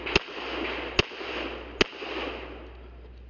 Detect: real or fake real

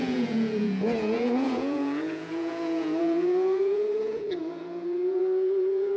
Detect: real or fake fake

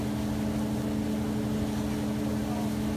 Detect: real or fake real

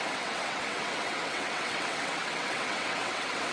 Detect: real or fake fake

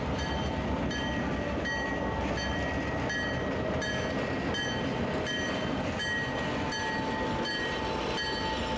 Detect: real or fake real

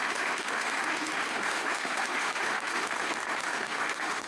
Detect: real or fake fake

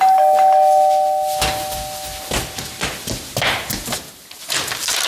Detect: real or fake real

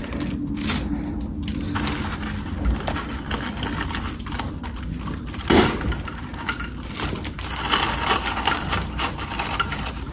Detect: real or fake real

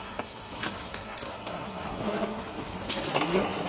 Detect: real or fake fake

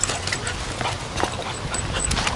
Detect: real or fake real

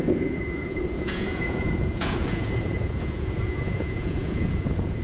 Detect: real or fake fake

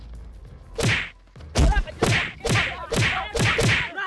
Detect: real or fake real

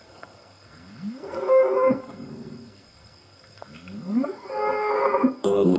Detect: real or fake fake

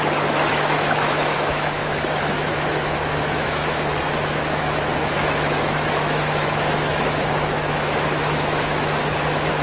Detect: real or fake fake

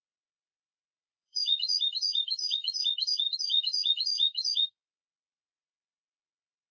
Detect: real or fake fake